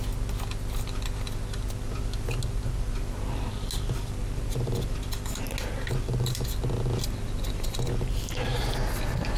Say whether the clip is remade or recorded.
recorded